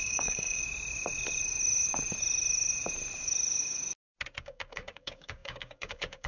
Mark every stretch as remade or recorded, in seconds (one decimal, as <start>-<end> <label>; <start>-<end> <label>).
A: 0.0-0.6 remade; 0.6-4.4 recorded; 4.4-6.3 remade